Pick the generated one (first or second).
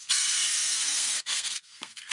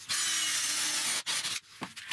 first